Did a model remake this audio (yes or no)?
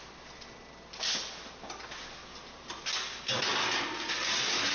no